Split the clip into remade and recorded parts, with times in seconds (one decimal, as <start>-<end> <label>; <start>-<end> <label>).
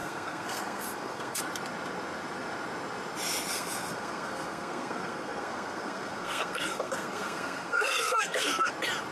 0.0-1.4 remade; 1.4-3.5 recorded; 3.5-8.7 remade; 8.7-9.1 recorded